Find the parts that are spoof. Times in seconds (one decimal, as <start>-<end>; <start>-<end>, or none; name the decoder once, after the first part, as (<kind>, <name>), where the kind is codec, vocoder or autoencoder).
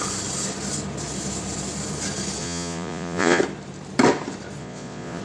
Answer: 2.4-3.4 (vocoder, Vocos); 4.6-5.2